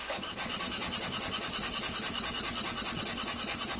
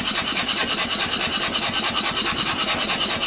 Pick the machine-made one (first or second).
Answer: second